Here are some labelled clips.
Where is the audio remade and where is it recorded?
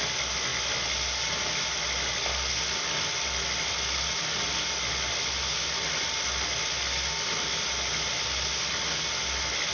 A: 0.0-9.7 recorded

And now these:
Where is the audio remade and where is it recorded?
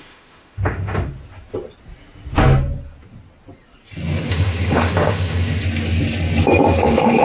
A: 0.0-1.1 remade; 1.1-4.3 recorded; 4.3-5.6 remade; 5.6-6.8 recorded; 6.8-7.2 remade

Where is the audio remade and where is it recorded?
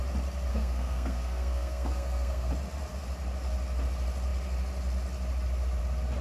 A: 0.0-0.5 recorded; 0.5-2.5 remade; 2.5-6.2 recorded